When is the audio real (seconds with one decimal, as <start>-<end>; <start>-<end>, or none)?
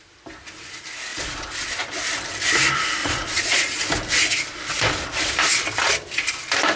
0.0-1.1; 1.8-3.0; 3.8-6.8